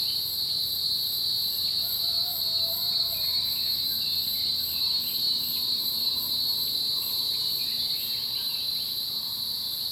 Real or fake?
fake